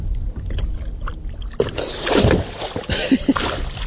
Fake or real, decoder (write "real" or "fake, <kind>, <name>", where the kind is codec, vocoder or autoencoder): real